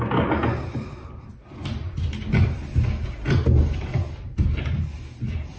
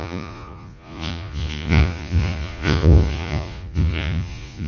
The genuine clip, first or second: first